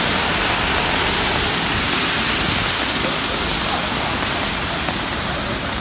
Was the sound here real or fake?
real